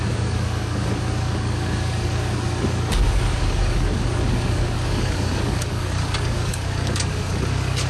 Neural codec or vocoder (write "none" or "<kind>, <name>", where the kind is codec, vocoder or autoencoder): codec, DAC